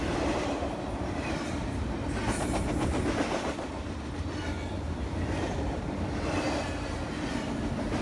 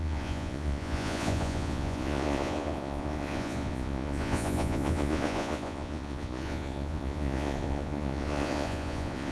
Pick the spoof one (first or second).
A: second